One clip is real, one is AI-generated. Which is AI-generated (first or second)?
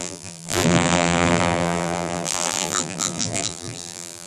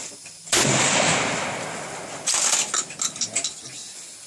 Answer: first